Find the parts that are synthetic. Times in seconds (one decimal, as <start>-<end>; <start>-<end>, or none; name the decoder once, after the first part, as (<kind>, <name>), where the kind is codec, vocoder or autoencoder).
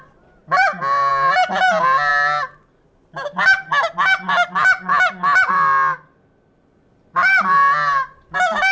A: none